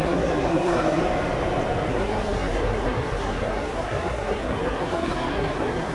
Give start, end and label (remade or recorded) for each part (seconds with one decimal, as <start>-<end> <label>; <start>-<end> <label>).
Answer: 0.0-1.0 remade; 1.0-1.9 recorded; 1.9-5.9 remade